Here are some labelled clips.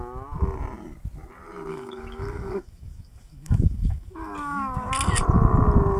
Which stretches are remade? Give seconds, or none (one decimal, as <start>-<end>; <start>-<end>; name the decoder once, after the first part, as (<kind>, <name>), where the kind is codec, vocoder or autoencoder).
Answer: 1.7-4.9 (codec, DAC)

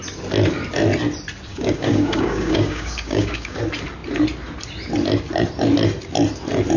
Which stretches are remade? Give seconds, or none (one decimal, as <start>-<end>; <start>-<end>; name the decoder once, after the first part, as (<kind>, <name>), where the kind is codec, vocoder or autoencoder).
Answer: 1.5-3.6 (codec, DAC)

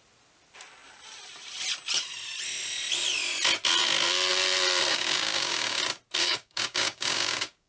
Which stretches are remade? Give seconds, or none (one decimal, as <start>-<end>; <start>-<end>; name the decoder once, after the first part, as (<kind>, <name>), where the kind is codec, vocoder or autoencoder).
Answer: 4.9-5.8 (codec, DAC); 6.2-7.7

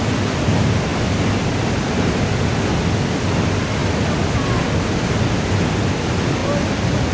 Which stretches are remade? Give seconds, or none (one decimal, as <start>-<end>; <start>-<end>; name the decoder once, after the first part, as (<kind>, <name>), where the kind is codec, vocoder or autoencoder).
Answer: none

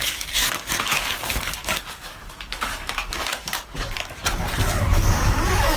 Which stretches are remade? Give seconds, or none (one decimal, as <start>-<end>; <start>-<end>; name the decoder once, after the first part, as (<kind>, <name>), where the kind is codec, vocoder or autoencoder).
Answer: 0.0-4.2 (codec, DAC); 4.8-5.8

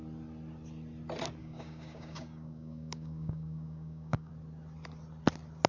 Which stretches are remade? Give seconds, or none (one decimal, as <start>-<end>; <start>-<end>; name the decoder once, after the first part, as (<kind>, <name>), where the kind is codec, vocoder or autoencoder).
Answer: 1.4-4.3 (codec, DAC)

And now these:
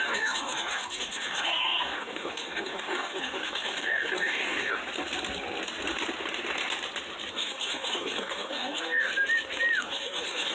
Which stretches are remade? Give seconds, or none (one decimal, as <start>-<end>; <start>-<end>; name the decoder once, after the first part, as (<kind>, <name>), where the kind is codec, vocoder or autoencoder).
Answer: 0.0-4.8 (codec, DAC); 7.3-9.1; 9.8-10.5

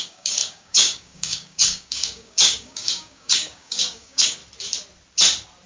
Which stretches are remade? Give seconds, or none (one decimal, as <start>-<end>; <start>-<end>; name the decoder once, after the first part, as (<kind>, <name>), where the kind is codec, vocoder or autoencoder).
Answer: 0.0-4.4 (codec, DAC)